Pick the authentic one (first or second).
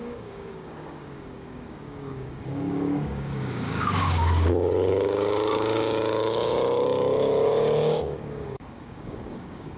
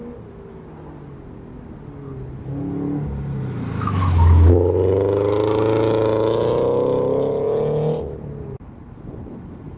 second